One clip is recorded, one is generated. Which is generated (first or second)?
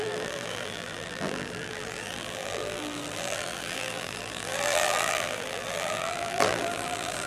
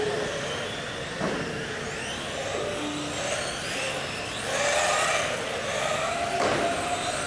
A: first